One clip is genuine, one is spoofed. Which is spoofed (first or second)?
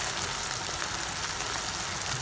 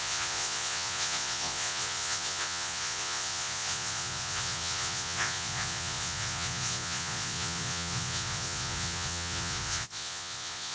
second